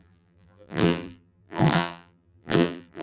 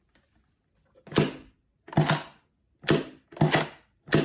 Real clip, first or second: second